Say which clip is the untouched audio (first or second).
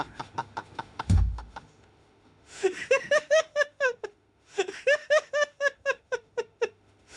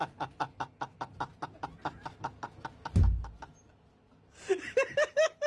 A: second